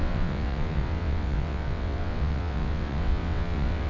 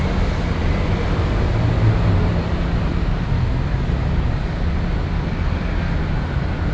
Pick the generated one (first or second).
first